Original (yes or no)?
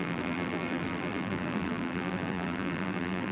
no